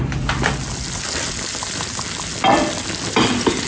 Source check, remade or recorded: recorded